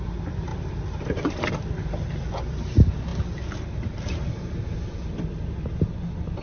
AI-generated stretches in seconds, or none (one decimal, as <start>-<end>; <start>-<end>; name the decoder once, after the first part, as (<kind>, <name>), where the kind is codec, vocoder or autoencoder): 0.0-6.4 (vocoder, BigVGAN v2)